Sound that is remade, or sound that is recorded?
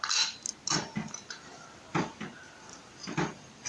recorded